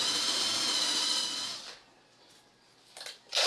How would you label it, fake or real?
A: real